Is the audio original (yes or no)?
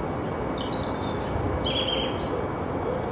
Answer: yes